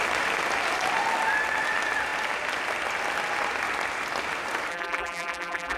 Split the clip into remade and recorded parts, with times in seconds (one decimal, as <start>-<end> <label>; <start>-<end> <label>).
0.0-4.7 recorded; 4.7-5.8 remade